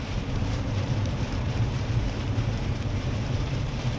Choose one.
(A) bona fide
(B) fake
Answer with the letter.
B